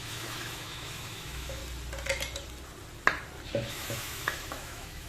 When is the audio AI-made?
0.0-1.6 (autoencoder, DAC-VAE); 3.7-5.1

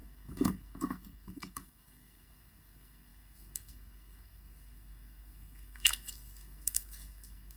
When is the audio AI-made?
0.0-7.6 (codec, SNAC)

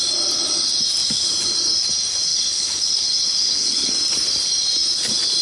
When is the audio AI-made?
2.3-3.9 (codec, HILCodec)

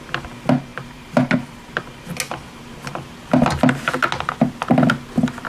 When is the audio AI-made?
0.7-1.6 (vocoder, BigVGAN v2)

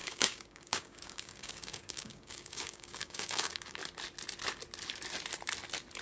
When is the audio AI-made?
0.0-3.8 (codec, DAC)